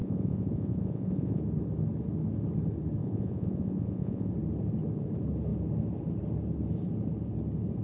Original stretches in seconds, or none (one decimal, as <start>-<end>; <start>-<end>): 1.4-3.0; 4.3-7.8